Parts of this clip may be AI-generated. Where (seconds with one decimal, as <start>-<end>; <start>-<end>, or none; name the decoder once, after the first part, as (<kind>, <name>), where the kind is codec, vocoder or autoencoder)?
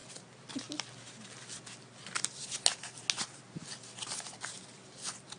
none